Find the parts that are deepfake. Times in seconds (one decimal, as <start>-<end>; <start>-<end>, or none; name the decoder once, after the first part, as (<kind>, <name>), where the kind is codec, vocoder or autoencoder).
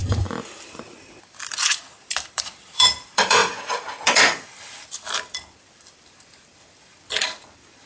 0.0-7.9 (vocoder, BigVGAN v2)